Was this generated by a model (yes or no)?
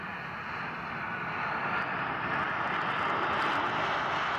no